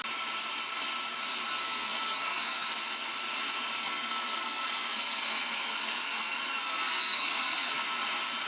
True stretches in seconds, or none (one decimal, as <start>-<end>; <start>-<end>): 0.0-1.5; 2.7-3.8; 8.0-8.5